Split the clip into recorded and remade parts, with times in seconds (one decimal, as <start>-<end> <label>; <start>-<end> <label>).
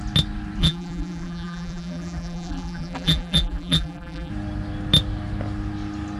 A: 0.0-0.6 recorded; 0.6-4.3 remade; 4.3-6.2 recorded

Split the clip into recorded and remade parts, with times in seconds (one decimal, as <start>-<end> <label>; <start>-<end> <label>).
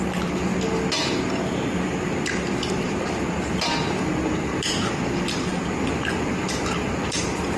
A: 0.0-0.5 remade; 0.5-5.1 recorded; 5.1-5.5 remade; 5.5-6.3 recorded; 6.3-7.6 remade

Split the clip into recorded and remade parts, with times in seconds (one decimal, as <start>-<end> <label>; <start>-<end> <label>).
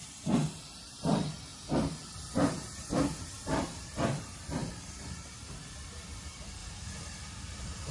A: 0.0-1.5 remade; 1.5-2.2 recorded; 2.2-6.6 remade; 6.6-7.3 recorded; 7.3-7.9 remade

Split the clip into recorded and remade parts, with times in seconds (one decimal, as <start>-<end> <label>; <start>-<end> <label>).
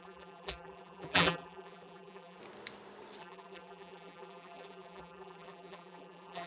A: 0.0-2.4 remade; 2.4-3.2 recorded; 3.2-6.5 remade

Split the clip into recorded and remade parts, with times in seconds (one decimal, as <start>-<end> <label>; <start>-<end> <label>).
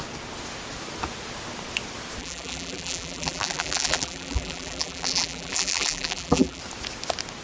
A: 0.0-2.2 recorded; 2.2-6.6 remade; 6.6-7.4 recorded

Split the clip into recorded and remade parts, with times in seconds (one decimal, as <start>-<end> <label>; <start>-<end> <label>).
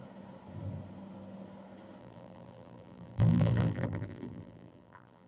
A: 0.0-2.0 recorded; 2.0-5.3 remade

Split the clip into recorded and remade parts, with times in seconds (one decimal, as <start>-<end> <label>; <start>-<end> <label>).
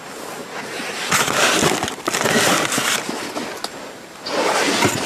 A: 0.0-5.1 recorded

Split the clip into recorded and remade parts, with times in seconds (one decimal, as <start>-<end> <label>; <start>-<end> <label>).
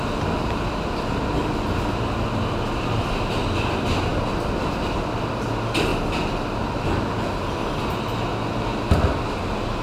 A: 0.0-9.8 recorded